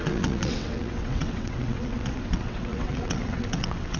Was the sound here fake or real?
fake